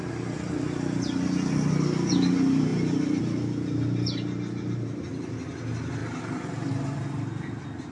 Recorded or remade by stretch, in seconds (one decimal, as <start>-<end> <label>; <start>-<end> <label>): 0.0-7.9 recorded